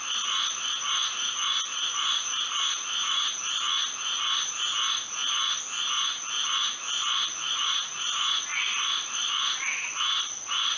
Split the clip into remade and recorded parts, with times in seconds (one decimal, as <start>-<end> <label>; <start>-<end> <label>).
0.0-3.2 remade; 3.2-7.5 recorded; 7.5-10.8 remade